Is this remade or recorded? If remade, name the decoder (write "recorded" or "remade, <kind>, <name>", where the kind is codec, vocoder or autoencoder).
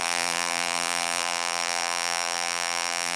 remade, vocoder, BigVGAN v2